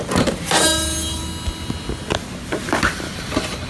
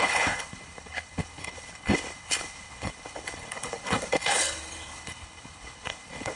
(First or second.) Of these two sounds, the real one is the first